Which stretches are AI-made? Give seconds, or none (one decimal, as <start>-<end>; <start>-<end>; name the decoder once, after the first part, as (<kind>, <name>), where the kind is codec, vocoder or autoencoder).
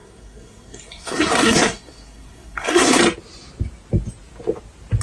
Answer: 0.0-3.0 (codec, SNAC)